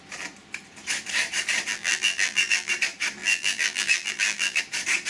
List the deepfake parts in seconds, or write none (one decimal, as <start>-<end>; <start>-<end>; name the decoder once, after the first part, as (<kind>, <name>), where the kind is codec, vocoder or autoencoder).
1.7-2.7 (vocoder, BigVGAN v2); 3.2-4.6